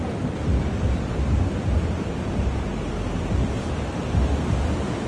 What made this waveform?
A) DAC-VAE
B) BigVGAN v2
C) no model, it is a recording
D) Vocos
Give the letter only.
C